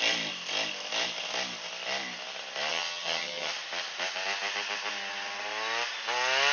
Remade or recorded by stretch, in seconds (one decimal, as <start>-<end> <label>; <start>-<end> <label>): 0.0-2.7 recorded; 2.7-3.5 remade; 3.5-6.5 recorded